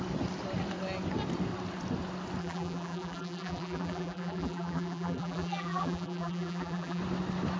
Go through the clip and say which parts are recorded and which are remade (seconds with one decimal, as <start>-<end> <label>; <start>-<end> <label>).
0.0-2.4 recorded; 2.4-7.0 remade; 7.0-7.6 recorded